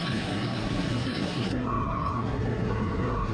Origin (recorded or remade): remade